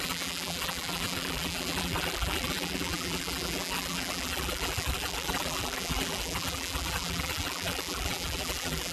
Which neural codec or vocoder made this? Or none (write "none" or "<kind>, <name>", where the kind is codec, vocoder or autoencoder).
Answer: vocoder, BigVGAN v2